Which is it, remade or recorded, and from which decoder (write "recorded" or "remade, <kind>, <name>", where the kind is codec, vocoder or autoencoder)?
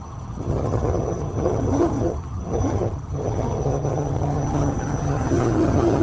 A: remade, vocoder, HiFi-GAN